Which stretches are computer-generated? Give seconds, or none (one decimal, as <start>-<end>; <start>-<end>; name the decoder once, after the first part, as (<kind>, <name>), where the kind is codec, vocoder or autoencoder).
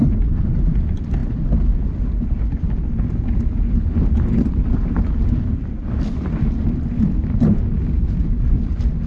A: none